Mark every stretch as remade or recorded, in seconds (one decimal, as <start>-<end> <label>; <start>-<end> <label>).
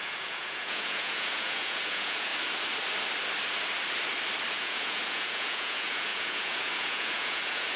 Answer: 0.0-2.3 remade; 2.3-4.5 recorded; 4.5-7.8 remade